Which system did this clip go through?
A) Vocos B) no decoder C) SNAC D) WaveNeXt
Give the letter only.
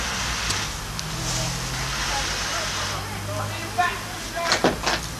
B